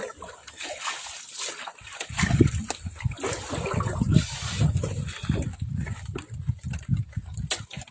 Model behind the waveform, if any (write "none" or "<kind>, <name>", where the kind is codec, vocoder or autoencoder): none